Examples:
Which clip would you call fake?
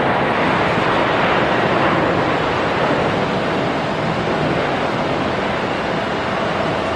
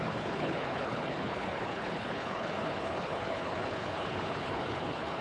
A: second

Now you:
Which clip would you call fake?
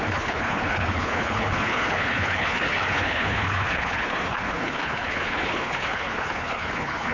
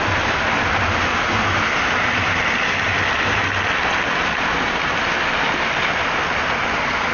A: first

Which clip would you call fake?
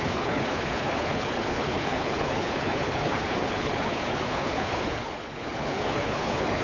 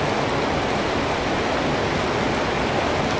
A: first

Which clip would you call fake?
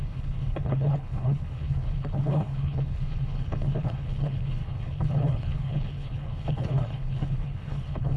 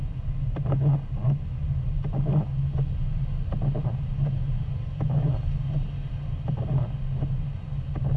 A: first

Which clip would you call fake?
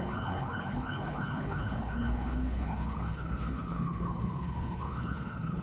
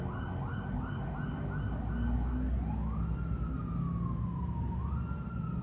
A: first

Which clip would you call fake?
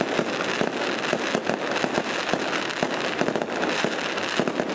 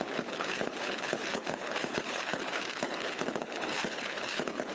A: second